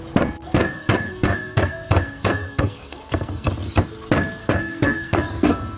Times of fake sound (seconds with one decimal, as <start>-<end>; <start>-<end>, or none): 0.4-3.5; 4.4-5.8